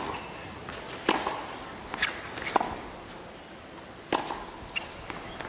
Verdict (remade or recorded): recorded